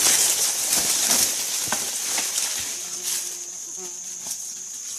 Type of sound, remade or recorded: recorded